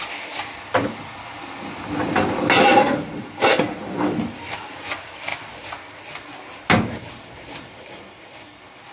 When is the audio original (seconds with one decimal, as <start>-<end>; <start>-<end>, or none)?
0.0-8.9